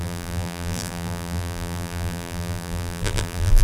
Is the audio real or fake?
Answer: fake